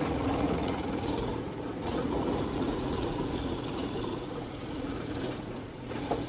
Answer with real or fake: fake